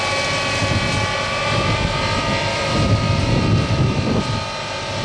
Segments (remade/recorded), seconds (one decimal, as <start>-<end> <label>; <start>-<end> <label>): 0.0-5.0 recorded